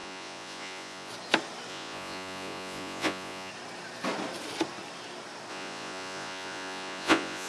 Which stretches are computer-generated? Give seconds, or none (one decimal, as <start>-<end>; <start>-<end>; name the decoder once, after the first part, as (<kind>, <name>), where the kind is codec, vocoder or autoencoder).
0.0-1.1 (vocoder, Vocos); 1.7-3.5; 5.5-7.5